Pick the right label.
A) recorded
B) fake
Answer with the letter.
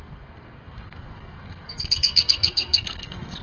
B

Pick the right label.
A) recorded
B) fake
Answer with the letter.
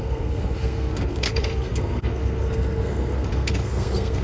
B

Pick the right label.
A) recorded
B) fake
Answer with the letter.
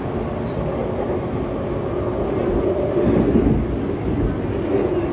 A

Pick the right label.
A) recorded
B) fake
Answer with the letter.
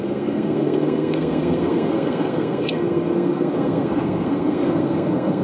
B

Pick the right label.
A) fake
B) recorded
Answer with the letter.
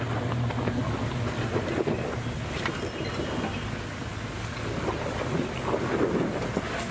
B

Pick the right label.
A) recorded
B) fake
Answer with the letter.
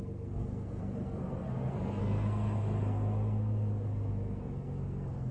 B